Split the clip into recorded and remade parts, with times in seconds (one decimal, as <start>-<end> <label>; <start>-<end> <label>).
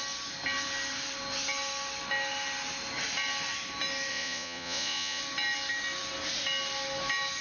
0.0-4.1 recorded; 4.1-5.2 remade; 5.2-7.4 recorded